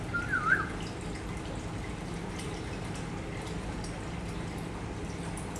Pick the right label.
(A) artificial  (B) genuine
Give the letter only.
B